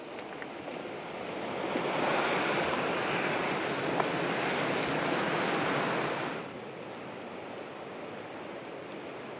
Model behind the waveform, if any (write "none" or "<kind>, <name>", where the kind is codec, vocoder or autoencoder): none